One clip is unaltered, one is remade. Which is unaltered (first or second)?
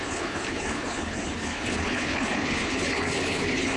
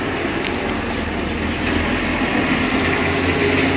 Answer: second